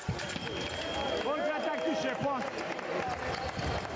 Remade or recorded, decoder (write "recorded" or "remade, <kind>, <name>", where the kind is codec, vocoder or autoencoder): recorded